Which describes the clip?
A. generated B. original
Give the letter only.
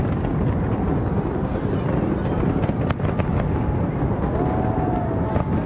B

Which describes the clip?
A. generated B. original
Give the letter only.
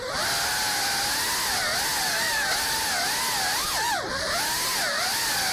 B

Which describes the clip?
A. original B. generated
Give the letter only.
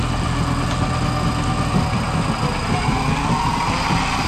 A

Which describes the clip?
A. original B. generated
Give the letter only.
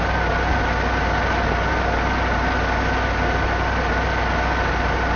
A